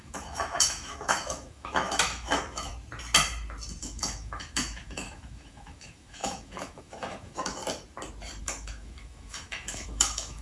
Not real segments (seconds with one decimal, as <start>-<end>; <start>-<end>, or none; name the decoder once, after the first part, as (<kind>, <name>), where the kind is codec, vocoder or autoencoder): 0.0-2.7 (autoencoder, DAC-VAE); 3.8-7.6; 8.4-10.4

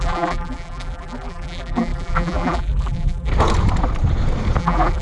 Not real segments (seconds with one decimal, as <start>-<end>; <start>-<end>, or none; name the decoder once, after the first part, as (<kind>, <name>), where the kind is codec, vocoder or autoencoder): 0.0-3.3 (vocoder, BigVGAN v2); 4.6-5.0

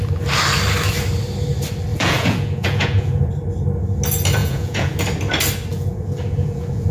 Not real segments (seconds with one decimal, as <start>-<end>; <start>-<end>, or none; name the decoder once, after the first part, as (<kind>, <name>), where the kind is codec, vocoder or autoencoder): 1.9-3.3 (vocoder, Vocos); 4.4-5.0; 5.7-6.9

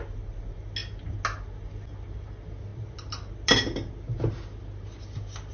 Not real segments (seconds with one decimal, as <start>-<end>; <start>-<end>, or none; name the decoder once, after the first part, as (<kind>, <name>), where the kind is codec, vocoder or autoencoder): none

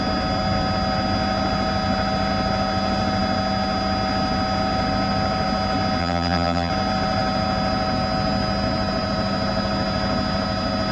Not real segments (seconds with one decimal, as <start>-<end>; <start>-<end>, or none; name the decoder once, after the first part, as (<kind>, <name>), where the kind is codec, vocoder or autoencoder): 6.0-6.7 (vocoder, BigVGAN v2)

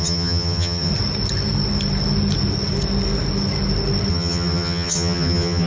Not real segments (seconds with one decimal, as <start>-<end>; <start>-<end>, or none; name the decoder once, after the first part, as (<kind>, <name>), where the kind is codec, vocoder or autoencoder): 0.0-0.9 (vocoder, HiFi-GAN); 4.1-5.7

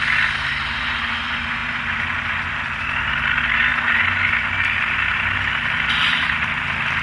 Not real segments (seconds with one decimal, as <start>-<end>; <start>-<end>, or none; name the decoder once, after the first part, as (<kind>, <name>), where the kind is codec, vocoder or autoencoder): none

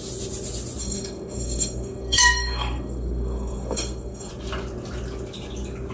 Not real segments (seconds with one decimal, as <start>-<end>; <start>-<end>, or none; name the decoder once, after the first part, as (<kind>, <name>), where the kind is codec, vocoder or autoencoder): 0.8-4.3 (codec, SNAC)